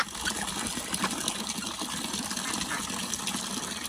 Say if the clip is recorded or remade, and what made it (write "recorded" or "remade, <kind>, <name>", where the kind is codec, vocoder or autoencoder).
recorded